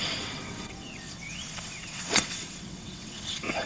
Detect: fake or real fake